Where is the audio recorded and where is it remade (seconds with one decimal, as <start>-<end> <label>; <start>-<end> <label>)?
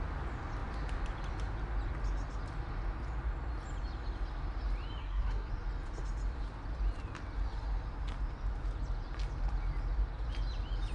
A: 0.0-5.0 recorded; 5.0-5.5 remade; 5.5-10.9 recorded